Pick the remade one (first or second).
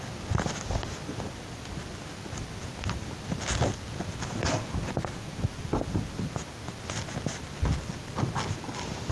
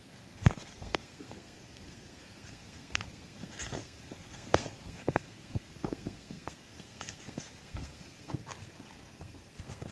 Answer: second